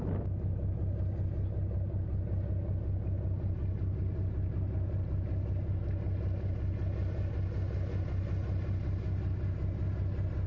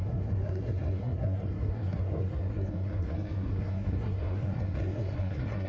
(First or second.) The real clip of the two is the first